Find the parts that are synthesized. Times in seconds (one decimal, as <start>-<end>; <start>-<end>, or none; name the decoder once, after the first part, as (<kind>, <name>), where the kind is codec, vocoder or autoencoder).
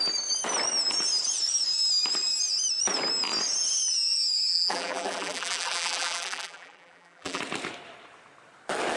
4.5-7.4 (vocoder, BigVGAN v2)